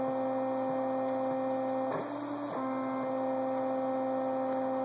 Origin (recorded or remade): recorded